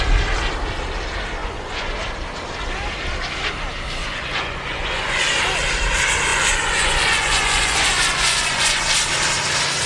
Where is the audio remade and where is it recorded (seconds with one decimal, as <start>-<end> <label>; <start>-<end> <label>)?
0.0-1.4 recorded; 1.4-1.9 remade; 1.9-4.0 recorded; 4.0-5.2 remade; 5.2-6.3 recorded; 6.3-8.9 remade; 8.9-9.9 recorded